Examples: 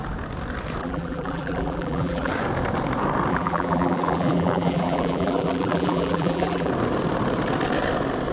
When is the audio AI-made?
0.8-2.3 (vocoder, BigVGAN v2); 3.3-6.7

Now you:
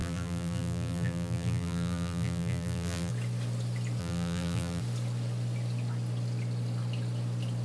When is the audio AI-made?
0.0-3.1 (vocoder, BigVGAN v2); 4.0-4.8

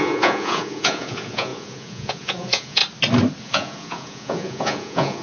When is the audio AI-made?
0.0-2.8 (vocoder, Vocos); 3.4-5.2

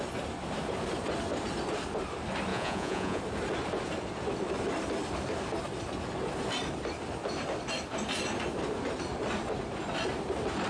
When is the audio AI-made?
2.5-3.2 (vocoder, Vocos)